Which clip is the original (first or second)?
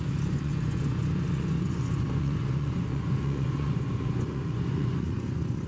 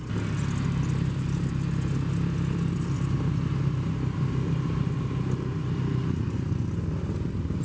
second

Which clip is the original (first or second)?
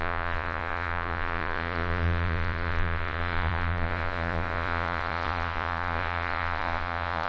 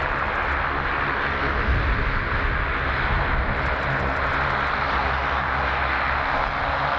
second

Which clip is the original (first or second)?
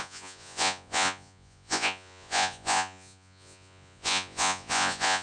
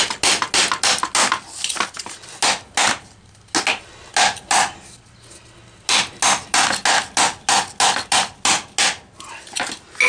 second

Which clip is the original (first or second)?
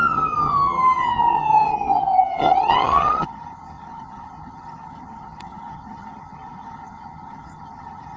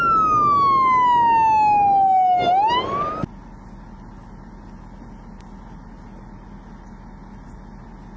second